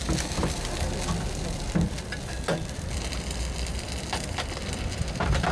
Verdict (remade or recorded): remade